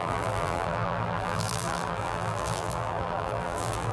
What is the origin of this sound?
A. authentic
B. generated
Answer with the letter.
B